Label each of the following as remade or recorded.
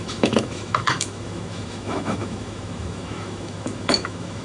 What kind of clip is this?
remade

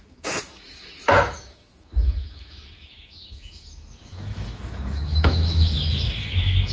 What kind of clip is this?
remade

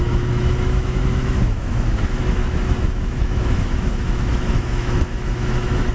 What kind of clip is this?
remade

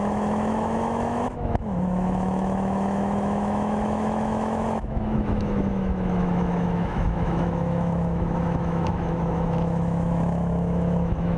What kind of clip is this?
remade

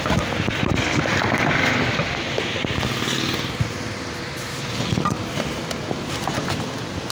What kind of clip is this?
recorded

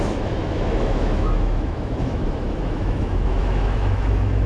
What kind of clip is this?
remade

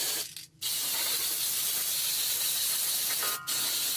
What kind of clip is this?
recorded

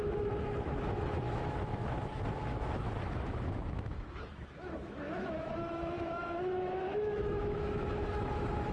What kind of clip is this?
remade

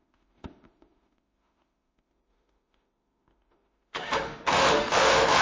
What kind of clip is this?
remade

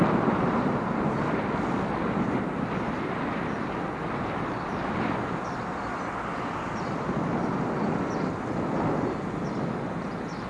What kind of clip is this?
recorded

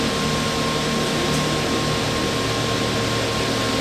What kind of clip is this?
recorded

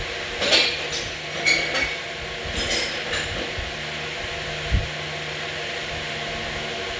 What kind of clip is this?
recorded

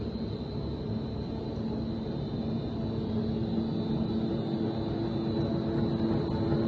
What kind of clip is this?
recorded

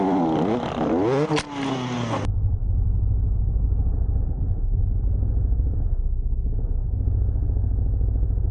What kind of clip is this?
recorded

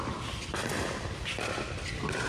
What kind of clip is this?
recorded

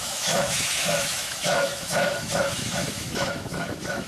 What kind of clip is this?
remade